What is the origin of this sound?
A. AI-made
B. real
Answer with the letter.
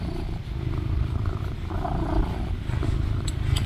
B